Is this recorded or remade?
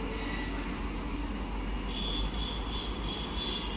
recorded